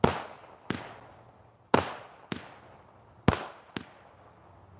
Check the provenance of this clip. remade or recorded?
recorded